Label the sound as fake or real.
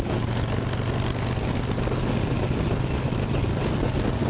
real